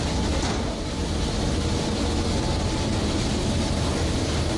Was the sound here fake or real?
real